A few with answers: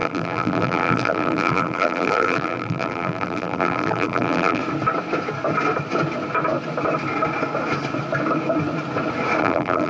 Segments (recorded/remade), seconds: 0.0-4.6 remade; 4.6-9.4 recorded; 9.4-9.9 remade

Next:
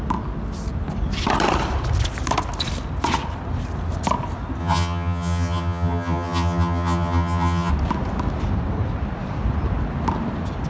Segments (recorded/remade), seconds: 0.0-4.6 recorded; 4.6-7.7 remade; 7.7-10.7 recorded